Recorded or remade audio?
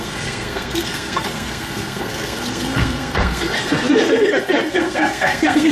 remade